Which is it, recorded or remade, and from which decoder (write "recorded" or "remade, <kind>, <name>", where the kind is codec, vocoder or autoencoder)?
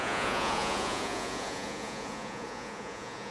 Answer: remade, vocoder, Vocos